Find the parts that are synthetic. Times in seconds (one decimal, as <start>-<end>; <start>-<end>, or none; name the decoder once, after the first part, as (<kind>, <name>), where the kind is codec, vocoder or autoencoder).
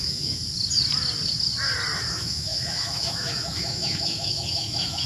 0.0-0.4 (autoencoder, DAC-VAE); 2.1-5.1